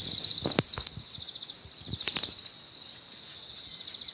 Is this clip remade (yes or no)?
no